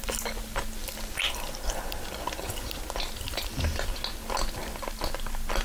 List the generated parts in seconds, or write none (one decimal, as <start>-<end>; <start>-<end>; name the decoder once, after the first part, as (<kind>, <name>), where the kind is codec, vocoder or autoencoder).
0.8-1.3 (vocoder, BigVGAN v2)

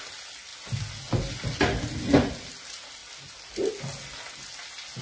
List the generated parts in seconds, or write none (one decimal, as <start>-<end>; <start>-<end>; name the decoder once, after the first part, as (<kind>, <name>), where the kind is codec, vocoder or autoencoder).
none